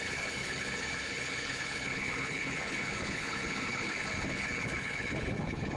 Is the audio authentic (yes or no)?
no